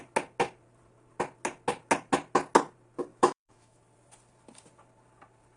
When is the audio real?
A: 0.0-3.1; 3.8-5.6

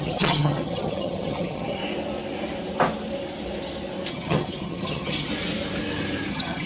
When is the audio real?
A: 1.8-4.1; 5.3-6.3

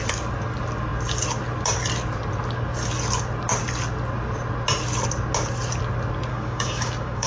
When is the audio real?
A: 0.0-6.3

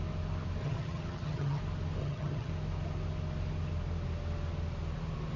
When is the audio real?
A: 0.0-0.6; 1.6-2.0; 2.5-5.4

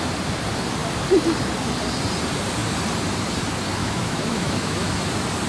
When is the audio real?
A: 0.0-3.8; 4.9-5.5

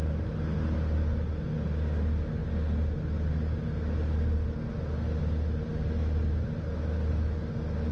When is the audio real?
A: 0.0-7.9

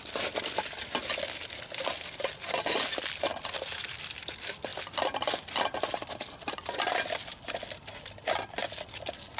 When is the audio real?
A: 0.0-9.4

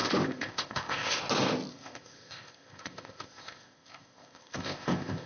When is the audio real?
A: 1.2-1.7